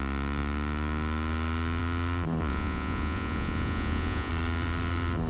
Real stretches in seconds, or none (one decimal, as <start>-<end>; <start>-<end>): 0.0-2.5; 4.3-5.3